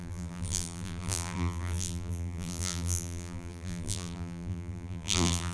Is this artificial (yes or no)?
yes